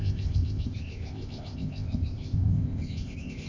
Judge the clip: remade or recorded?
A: remade